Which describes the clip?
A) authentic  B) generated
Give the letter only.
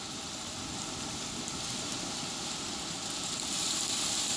B